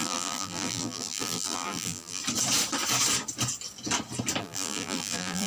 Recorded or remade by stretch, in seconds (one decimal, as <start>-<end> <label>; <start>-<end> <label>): 0.0-2.2 remade; 2.2-4.4 recorded; 4.4-5.5 remade